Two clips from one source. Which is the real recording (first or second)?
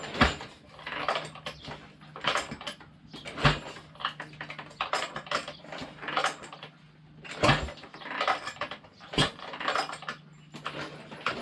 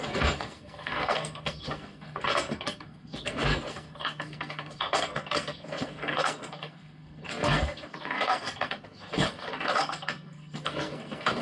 first